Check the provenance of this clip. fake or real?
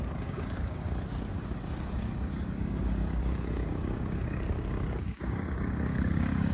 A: fake